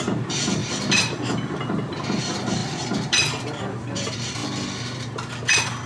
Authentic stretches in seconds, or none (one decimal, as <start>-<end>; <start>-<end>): none